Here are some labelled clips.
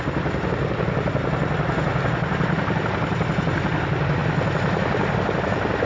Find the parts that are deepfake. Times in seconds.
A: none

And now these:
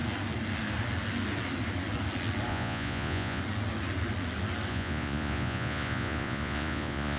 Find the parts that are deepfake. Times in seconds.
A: 2.5-3.4 (vocoder, Vocos); 4.7-7.2

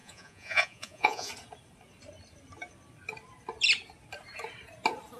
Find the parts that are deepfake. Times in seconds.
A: 0.0-1.3 (vocoder, Vocos)

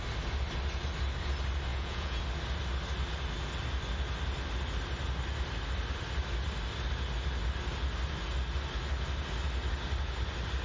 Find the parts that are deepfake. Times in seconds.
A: 1.7-2.2 (vocoder, Vocos)

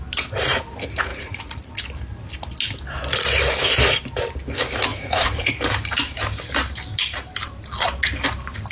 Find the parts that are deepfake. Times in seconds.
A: 1.1-1.7 (vocoder, Vocos); 4.9-5.5